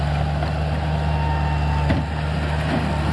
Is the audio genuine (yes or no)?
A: yes